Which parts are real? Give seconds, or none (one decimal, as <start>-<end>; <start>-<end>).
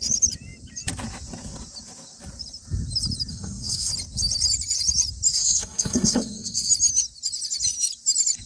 0.0-3.3; 3.9-5.3; 6.7-8.5